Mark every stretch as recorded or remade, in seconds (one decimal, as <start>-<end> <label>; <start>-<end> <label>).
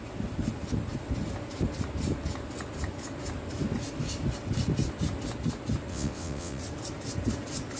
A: 0.0-5.9 recorded; 5.9-6.6 remade; 6.6-7.8 recorded